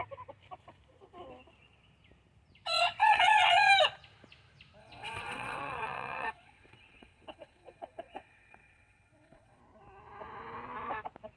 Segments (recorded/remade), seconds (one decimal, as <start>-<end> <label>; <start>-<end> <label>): 0.0-3.0 recorded; 3.0-3.7 remade; 3.7-4.8 recorded; 4.8-9.6 remade; 9.6-11.4 recorded